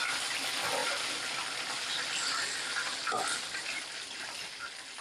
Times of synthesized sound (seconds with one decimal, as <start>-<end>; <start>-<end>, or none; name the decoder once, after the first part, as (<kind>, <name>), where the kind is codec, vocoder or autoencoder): none